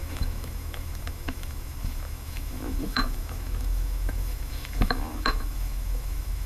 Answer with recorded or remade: remade